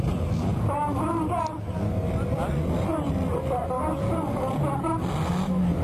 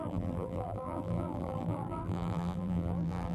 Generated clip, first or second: second